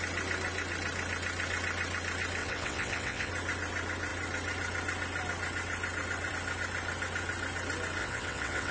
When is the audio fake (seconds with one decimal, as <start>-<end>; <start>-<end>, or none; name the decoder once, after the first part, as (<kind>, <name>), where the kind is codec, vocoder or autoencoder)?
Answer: 2.4-3.3 (vocoder, WaveNeXt); 8.0-8.7